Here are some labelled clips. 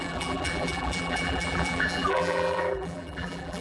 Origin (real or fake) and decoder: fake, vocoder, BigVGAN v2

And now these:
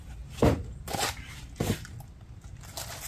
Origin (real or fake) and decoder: real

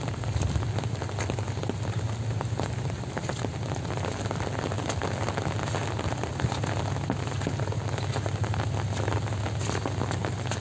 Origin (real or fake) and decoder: real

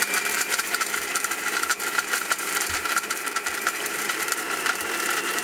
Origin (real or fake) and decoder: fake, vocoder, BigVGAN v2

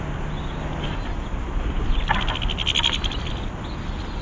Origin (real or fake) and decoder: real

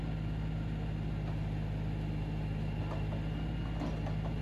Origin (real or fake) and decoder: real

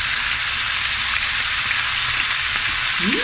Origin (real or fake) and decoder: fake, vocoder, BigVGAN v2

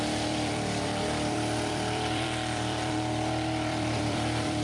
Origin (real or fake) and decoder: fake, vocoder, BigVGAN v2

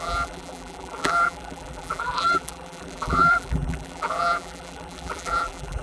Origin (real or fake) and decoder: fake, vocoder, BigVGAN v2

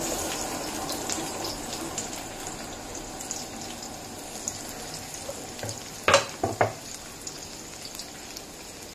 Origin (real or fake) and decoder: real